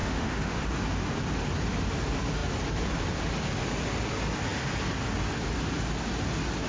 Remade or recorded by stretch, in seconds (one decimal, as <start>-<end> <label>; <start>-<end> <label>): 0.0-0.6 remade; 0.6-6.7 recorded